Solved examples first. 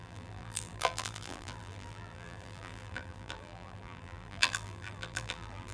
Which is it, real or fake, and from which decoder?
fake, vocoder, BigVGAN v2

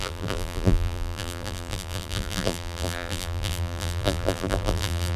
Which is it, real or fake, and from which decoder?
fake, vocoder, BigVGAN v2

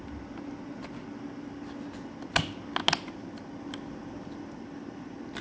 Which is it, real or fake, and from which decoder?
real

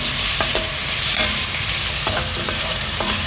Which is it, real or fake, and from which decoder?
fake, vocoder, BigVGAN v2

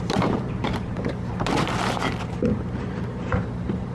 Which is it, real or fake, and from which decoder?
fake, vocoder, BigVGAN v2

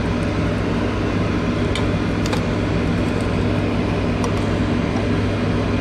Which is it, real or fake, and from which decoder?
real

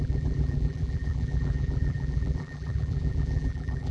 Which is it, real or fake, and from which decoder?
fake, vocoder, BigVGAN v2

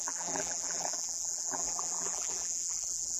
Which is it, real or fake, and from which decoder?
fake, vocoder, BigVGAN v2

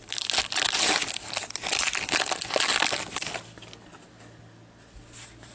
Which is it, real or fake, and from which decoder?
real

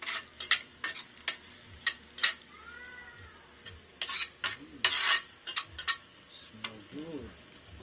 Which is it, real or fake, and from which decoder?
real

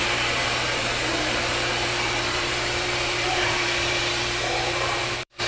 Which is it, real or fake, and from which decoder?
fake, vocoder, BigVGAN v2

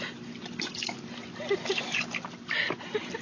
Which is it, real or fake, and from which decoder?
real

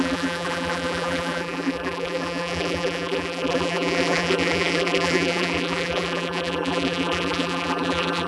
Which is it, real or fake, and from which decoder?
fake, vocoder, BigVGAN v2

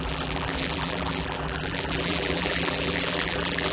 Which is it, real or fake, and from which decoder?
fake, vocoder, BigVGAN v2